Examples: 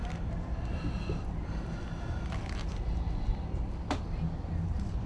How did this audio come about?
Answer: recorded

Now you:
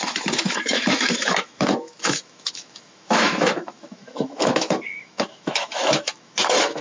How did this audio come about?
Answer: remade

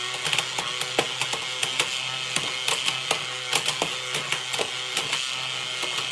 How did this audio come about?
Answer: recorded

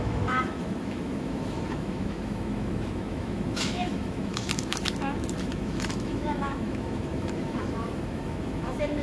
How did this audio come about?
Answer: remade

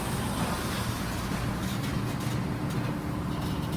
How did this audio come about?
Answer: recorded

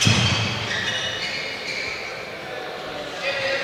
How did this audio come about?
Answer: recorded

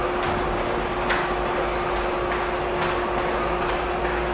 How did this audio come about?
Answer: recorded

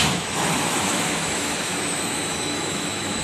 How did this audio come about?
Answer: remade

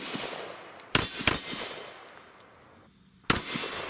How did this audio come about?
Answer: recorded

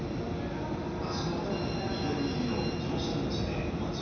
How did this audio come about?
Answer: recorded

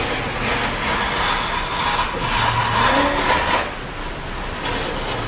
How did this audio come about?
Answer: recorded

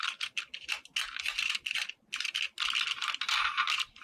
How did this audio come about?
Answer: recorded